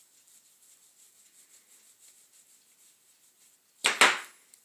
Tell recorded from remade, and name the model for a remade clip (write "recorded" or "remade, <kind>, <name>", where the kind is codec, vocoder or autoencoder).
recorded